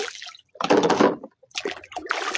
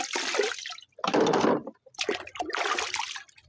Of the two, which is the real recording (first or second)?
second